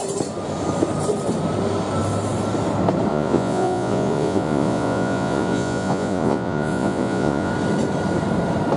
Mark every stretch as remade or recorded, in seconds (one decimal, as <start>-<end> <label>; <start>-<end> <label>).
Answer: 0.0-3.1 recorded; 3.1-7.5 remade; 7.5-8.8 recorded